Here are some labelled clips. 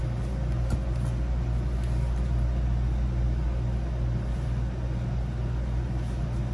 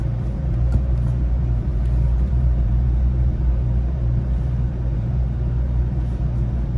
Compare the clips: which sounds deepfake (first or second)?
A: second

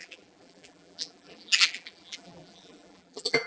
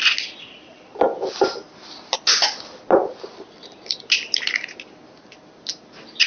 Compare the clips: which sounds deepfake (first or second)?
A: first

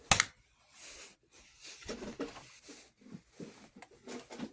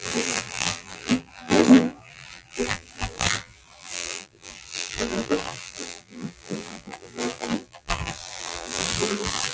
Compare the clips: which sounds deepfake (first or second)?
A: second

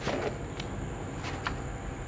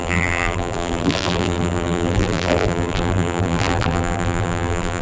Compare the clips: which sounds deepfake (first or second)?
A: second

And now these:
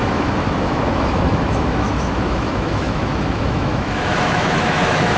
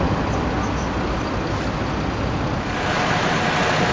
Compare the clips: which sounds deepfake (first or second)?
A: first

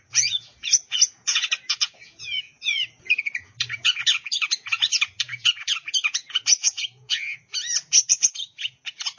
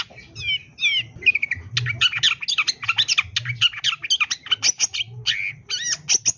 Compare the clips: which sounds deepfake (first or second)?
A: first